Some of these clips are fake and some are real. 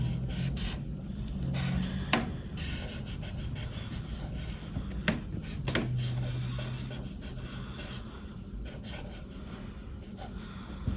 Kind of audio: real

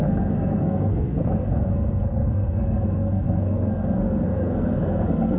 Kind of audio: fake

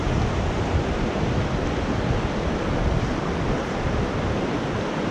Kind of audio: real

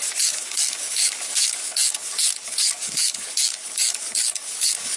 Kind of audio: fake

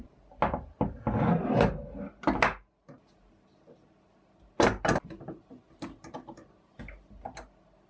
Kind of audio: real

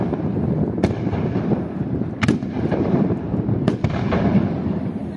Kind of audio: fake